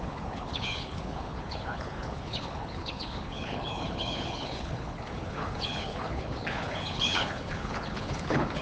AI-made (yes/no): yes